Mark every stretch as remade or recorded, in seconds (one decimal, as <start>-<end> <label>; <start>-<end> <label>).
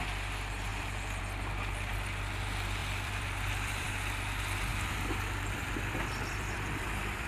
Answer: 0.0-0.7 recorded; 0.7-1.2 remade; 1.2-2.8 recorded; 2.8-3.9 remade; 3.9-4.7 recorded; 4.7-7.3 remade